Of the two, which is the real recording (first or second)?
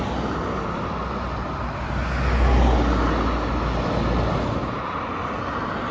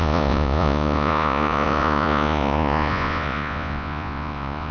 first